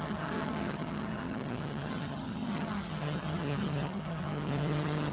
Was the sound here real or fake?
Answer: fake